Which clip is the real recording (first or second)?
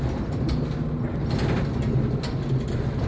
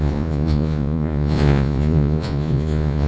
first